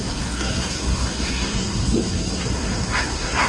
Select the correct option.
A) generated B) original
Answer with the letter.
A